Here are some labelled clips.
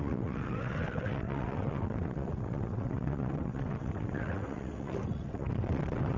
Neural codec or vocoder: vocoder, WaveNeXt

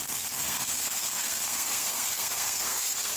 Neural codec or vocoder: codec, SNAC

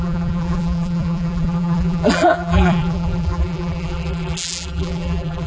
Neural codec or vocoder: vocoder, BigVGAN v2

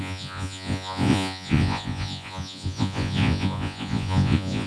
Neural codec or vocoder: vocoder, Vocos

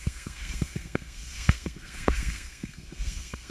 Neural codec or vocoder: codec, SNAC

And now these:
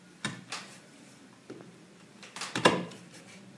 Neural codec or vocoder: vocoder, BigVGAN v2